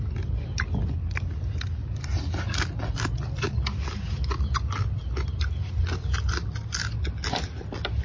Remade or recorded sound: recorded